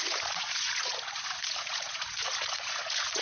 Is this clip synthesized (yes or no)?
yes